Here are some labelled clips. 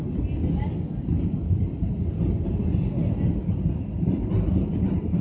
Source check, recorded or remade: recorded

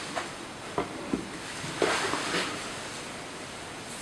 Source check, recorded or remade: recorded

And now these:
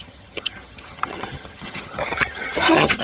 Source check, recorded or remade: remade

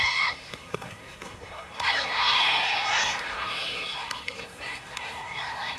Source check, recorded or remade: remade